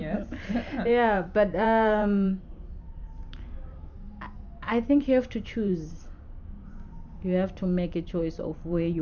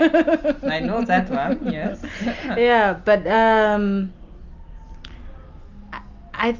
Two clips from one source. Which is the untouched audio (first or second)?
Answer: second